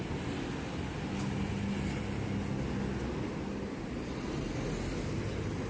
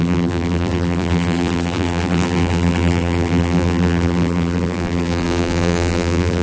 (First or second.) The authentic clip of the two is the first